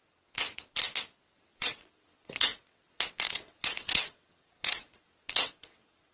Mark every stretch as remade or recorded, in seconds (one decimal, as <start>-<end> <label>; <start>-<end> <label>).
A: 0.0-0.4 remade; 0.4-1.6 recorded; 1.6-6.1 remade